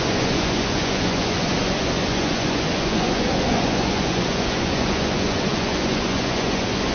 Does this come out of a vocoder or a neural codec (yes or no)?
yes